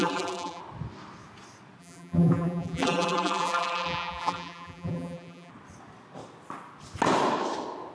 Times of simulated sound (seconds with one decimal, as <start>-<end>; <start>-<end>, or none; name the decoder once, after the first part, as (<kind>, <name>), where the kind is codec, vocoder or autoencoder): 0.0-0.6 (vocoder, BigVGAN v2); 1.8-5.5